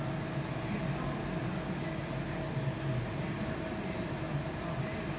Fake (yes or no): no